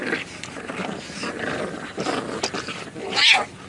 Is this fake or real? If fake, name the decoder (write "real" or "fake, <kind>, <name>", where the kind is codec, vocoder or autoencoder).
real